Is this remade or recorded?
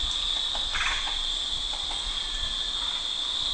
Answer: recorded